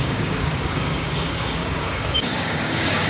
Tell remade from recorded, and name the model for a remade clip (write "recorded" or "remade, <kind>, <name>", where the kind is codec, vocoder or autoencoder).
remade, codec, DAC